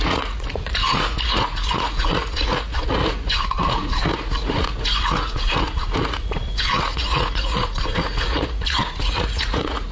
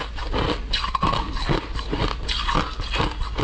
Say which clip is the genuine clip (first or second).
second